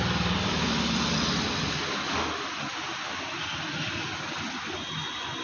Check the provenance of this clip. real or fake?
real